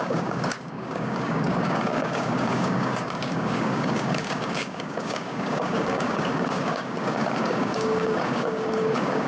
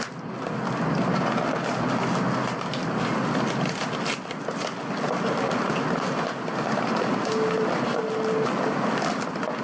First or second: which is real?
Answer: second